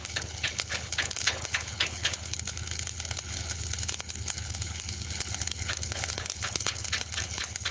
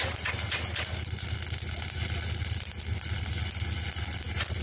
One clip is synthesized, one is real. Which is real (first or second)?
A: second